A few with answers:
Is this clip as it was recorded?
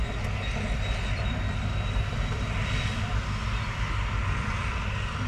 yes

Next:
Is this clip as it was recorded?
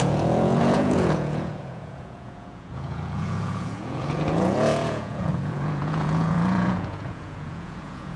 no